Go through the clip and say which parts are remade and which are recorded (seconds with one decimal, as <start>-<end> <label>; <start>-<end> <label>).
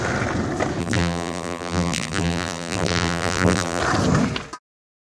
0.0-0.8 recorded; 0.8-3.8 remade; 3.8-5.0 recorded